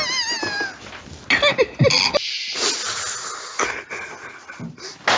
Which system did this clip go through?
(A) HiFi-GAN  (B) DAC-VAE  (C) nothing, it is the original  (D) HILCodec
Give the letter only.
C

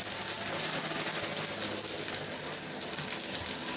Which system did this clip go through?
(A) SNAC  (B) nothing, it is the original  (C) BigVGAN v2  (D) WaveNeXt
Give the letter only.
B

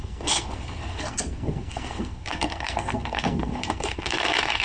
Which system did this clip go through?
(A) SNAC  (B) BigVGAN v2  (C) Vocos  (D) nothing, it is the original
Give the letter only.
A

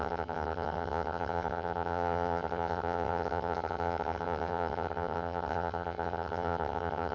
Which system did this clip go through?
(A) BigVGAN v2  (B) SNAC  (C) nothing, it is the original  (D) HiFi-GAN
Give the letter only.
D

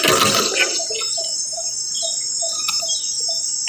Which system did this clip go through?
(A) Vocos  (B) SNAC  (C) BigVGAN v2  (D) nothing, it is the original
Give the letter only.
D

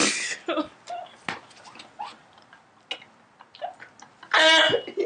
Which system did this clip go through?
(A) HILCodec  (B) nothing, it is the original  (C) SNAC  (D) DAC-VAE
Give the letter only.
B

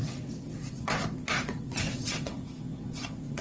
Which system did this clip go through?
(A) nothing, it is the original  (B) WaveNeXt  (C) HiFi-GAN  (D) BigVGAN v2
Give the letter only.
B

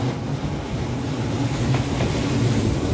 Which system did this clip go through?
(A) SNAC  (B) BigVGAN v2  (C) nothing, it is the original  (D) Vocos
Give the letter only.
C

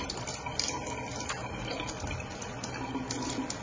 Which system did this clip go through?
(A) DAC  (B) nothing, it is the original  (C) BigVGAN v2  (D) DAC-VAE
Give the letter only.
B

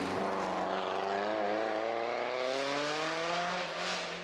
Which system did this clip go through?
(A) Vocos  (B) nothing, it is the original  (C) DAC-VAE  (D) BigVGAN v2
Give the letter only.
B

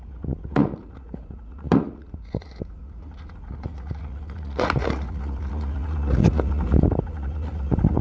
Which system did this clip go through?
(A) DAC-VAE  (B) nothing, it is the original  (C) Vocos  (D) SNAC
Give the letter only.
C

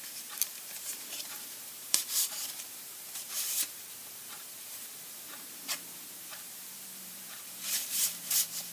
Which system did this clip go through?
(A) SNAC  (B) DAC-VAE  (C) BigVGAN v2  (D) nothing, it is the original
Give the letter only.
C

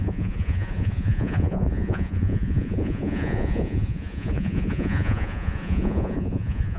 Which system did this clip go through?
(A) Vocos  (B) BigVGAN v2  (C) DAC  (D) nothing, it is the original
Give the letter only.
A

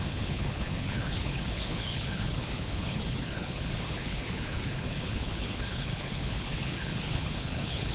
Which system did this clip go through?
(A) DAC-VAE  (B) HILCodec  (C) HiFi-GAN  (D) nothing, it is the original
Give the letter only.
B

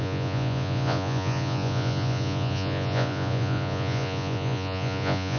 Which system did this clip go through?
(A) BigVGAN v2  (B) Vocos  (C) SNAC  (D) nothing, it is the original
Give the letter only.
B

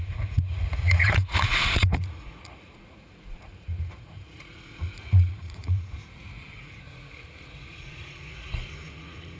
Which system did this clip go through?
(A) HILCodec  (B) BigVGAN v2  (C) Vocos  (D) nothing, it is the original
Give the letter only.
C